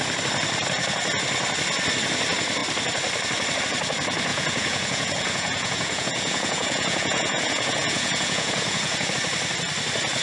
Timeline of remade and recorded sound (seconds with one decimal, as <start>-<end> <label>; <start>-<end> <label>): 0.0-4.3 recorded; 4.3-9.1 remade; 9.1-10.2 recorded